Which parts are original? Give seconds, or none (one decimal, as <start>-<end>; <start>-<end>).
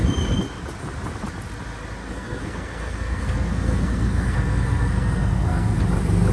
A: 0.0-2.0; 5.8-6.3